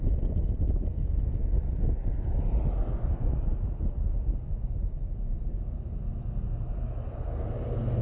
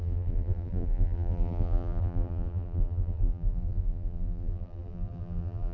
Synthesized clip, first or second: second